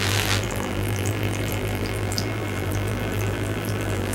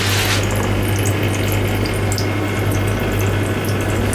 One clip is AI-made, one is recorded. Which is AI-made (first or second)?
first